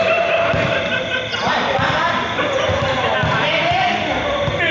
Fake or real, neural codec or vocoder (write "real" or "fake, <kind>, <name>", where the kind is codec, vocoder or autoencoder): real